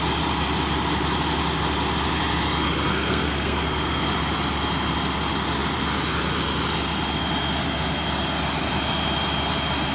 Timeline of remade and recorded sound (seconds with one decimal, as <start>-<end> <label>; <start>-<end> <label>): 0.0-2.9 recorded; 2.9-4.0 remade; 4.0-9.9 recorded